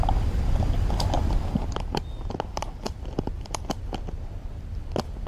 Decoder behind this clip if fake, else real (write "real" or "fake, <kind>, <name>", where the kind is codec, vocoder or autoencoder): real